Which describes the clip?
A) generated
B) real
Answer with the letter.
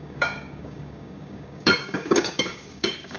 A